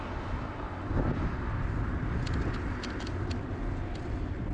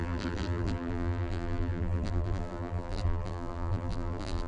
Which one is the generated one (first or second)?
second